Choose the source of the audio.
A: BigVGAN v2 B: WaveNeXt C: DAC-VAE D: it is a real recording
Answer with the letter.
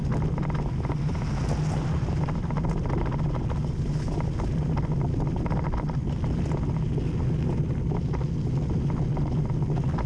D